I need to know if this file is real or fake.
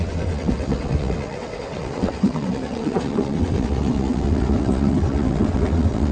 fake